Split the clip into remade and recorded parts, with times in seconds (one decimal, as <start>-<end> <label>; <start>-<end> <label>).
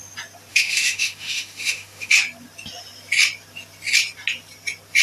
0.0-0.5 recorded; 0.5-2.1 remade; 2.1-5.0 recorded